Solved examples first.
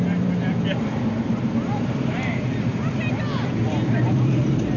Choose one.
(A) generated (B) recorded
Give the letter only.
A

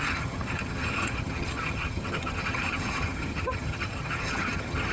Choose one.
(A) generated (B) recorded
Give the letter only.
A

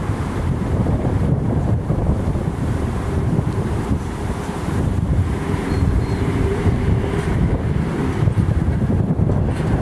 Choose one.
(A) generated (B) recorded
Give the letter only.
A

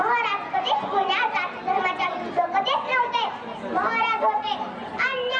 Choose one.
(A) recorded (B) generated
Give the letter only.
A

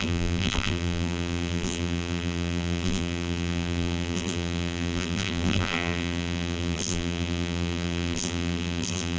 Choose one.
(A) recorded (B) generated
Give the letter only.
B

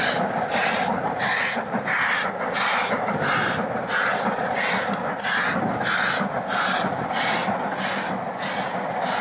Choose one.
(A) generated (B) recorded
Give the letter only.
B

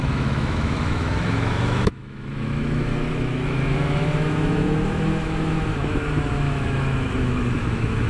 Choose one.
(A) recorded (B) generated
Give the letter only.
B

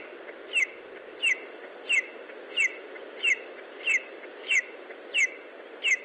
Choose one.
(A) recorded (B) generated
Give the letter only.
A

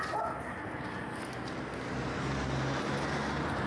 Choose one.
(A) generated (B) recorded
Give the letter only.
B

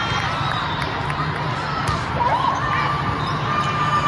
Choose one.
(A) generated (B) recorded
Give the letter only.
B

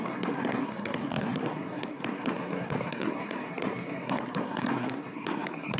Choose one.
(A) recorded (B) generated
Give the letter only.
B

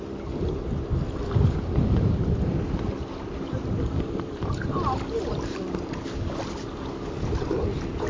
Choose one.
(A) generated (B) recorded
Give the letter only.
B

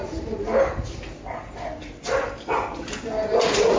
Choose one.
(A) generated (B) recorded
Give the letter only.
B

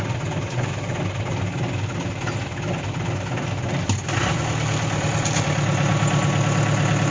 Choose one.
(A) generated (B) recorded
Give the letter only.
B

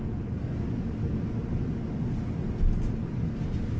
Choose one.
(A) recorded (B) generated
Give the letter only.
A